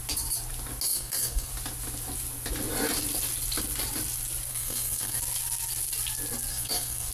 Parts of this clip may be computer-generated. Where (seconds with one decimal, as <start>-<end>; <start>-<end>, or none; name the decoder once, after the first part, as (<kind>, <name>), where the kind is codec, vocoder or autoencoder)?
0.9-1.5 (codec, SNAC); 4.5-5.2; 6.5-7.1